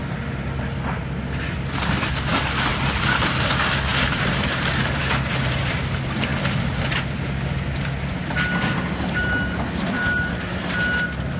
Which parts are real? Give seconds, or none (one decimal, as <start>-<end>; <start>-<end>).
0.0-2.7; 3.5-3.9; 5.0-11.4